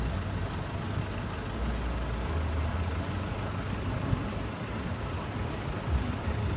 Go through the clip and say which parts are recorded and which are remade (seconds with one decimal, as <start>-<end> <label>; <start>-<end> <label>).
0.0-2.7 recorded; 2.7-3.2 remade; 3.2-6.6 recorded